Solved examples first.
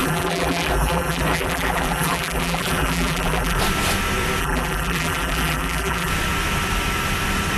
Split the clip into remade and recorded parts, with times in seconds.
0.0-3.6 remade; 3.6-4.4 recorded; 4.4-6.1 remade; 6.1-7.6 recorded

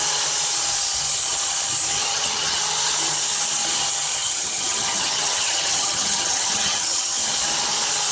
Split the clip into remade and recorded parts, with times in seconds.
0.0-2.0 recorded; 2.0-2.6 remade; 2.6-4.2 recorded; 4.2-7.2 remade; 7.2-8.1 recorded

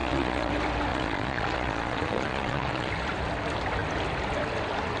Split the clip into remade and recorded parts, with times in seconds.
0.0-0.5 remade; 0.5-0.9 recorded; 0.9-2.9 remade; 2.9-5.0 recorded

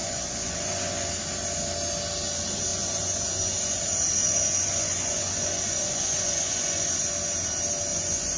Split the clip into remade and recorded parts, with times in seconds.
0.0-1.1 remade; 1.1-2.7 recorded; 2.7-3.8 remade; 3.8-4.2 recorded; 4.2-6.9 remade; 6.9-7.9 recorded; 7.9-8.4 remade

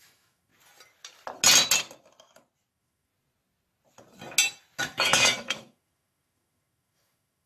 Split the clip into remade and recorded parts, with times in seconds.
0.0-0.5 remade; 0.5-2.7 recorded; 2.7-3.1 remade; 3.1-4.8 recorded; 4.8-7.5 remade